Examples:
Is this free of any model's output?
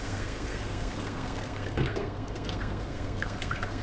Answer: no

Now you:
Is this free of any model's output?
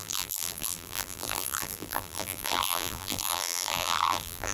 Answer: no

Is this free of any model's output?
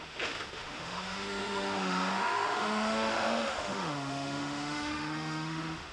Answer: no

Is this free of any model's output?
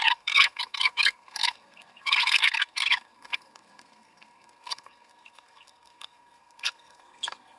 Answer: no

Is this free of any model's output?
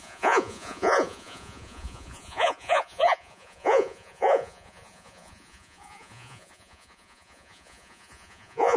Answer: no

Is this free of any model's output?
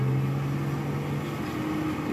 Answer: yes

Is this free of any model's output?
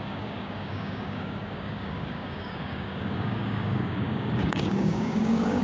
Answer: no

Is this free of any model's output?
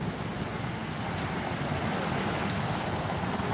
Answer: yes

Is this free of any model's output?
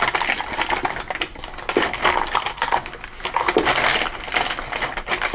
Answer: yes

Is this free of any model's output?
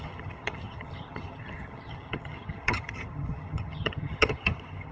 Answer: no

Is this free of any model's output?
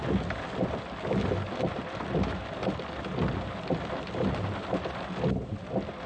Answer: yes